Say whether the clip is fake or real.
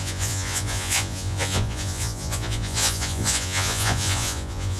fake